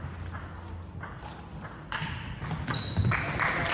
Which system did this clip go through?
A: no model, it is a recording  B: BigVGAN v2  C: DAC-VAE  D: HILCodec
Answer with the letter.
A